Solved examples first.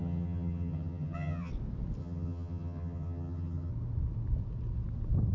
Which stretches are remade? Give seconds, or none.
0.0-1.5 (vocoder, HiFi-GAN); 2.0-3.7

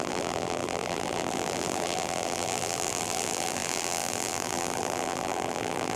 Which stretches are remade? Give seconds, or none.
0.0-6.0 (vocoder, BigVGAN v2)

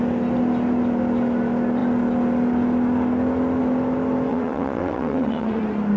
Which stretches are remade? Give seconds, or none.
4.3-5.6 (vocoder, WaveNeXt)